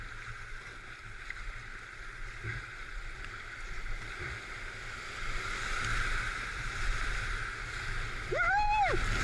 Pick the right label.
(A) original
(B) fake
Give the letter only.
A